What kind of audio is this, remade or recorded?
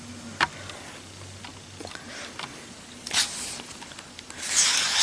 recorded